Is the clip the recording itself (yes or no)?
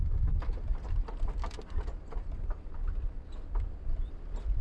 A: yes